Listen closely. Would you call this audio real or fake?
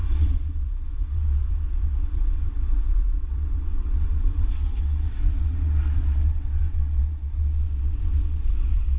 fake